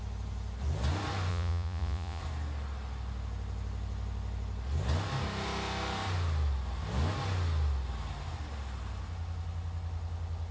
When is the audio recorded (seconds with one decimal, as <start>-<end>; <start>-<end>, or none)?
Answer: 0.0-1.3; 2.2-10.5